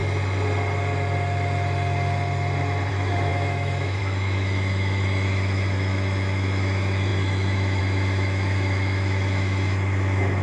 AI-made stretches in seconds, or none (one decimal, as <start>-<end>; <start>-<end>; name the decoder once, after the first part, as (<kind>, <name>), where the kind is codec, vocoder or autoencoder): 2.9-10.4 (autoencoder, DAC-VAE)